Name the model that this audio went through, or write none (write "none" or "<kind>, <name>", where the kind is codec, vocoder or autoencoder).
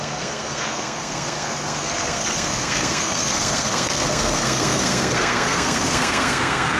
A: codec, SNAC